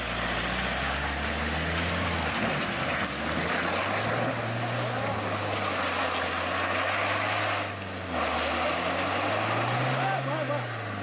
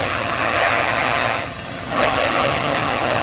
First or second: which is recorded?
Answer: first